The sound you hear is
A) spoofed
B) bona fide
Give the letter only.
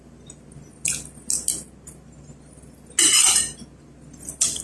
B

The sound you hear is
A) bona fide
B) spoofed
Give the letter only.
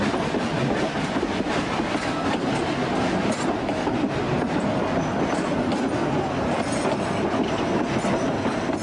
A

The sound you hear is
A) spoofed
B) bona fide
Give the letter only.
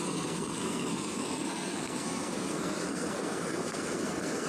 A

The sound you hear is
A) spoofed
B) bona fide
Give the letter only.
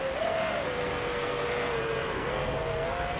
A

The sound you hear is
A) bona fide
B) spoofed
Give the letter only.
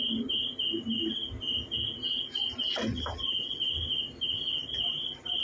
A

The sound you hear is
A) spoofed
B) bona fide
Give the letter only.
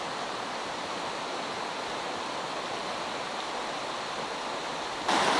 B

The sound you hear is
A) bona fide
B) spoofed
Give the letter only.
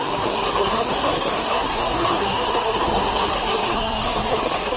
B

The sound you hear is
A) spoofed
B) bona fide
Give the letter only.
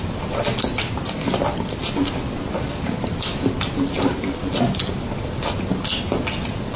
B